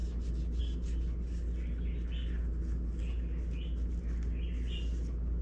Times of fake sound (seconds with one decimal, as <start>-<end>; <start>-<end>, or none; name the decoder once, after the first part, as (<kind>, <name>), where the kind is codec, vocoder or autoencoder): none